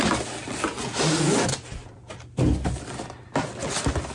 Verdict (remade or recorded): recorded